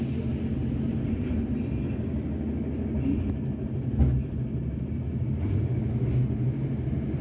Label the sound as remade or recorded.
recorded